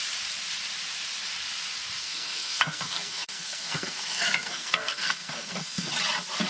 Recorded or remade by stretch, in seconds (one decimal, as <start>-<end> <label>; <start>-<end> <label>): 0.0-2.0 recorded; 2.0-5.9 remade; 5.9-6.5 recorded